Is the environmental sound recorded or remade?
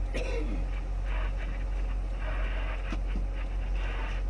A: recorded